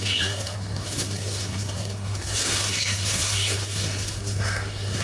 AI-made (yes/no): yes